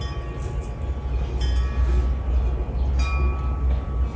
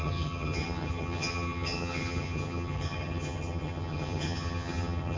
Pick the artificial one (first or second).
second